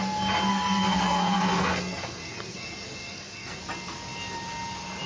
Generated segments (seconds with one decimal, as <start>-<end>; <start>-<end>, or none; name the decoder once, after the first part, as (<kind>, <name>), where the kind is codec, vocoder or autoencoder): 0.5-3.6 (codec, SNAC)